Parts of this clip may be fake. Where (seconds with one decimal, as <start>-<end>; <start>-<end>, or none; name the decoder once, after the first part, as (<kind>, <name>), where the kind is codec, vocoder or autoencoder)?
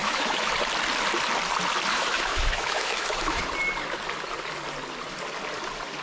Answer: 0.0-0.5 (autoencoder, DAC-VAE); 1.9-3.4